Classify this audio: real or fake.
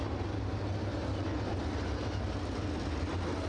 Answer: real